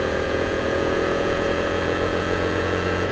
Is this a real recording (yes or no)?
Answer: no